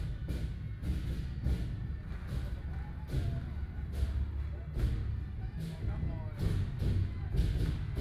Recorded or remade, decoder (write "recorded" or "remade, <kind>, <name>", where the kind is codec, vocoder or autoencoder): recorded